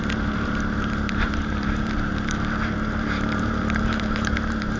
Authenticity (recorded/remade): remade